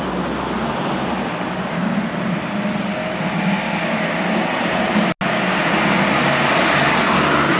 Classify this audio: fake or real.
real